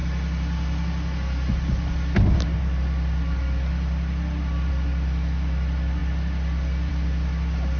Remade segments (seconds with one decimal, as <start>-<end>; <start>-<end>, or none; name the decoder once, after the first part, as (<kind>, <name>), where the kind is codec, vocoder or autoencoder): none